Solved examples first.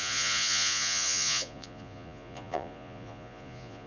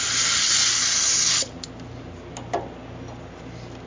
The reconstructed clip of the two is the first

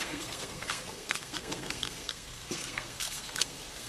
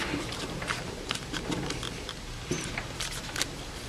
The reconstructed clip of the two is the first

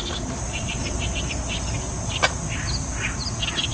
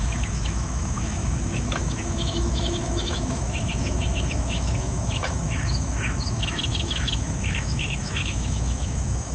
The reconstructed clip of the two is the second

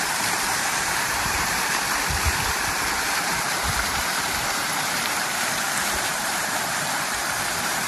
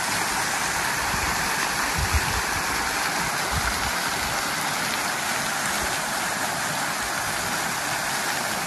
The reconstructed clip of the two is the first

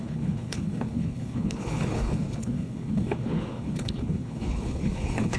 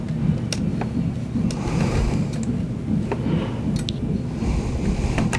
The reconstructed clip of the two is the first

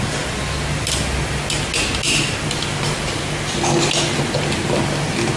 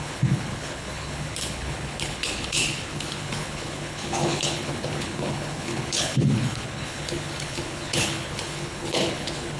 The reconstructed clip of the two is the second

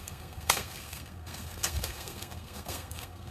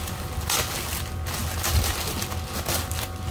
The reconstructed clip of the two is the first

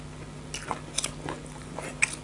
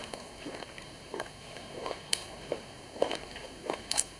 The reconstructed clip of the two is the second